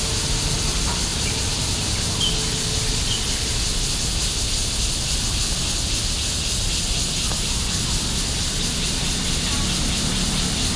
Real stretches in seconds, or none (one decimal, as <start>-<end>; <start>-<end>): 0.0-1.1; 2.2-10.8